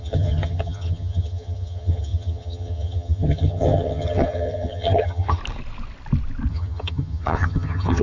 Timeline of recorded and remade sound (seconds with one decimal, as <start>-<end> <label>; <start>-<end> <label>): 0.0-5.4 remade; 5.4-6.5 recorded; 6.5-8.0 remade